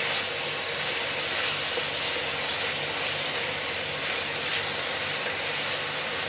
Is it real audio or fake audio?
real